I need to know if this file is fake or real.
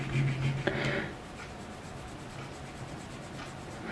real